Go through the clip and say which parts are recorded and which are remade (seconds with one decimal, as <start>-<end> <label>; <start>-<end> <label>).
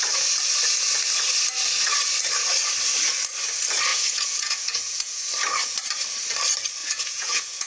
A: 0.0-3.9 recorded; 3.9-5.2 remade; 5.2-6.8 recorded; 6.8-7.7 remade